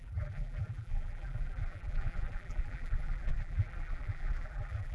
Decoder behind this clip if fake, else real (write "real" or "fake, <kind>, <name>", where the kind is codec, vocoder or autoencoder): fake, vocoder, BigVGAN v2